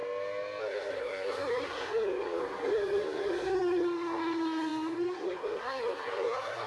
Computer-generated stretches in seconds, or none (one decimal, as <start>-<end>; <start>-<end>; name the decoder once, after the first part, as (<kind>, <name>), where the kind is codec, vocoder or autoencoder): 0.6-6.7 (codec, SNAC)